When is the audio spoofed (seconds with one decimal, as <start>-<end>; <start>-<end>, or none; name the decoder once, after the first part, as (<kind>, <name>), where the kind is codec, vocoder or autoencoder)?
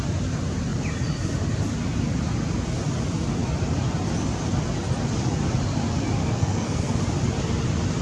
6.2-7.0 (codec, SNAC)